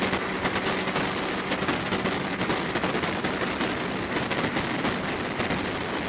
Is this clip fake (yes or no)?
no